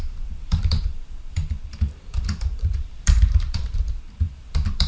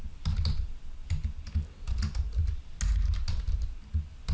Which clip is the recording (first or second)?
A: second